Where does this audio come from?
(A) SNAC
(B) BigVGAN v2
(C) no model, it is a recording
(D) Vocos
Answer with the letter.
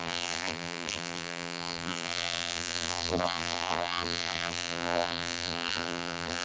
B